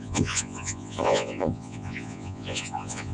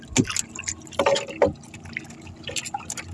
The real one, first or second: second